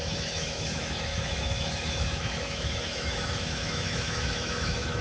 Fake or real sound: fake